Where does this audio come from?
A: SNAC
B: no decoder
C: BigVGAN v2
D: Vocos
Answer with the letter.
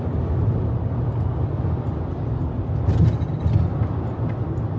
B